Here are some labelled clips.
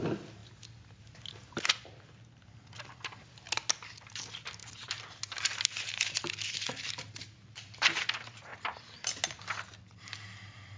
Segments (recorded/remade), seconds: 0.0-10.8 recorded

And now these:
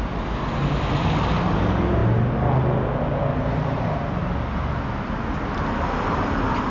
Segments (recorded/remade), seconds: 0.0-6.7 recorded